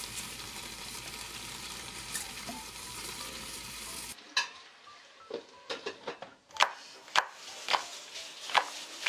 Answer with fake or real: fake